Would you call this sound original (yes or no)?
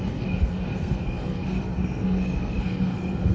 no